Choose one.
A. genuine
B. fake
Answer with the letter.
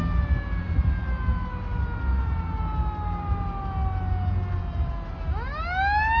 A